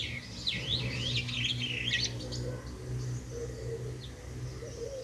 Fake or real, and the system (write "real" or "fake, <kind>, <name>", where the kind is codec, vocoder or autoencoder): real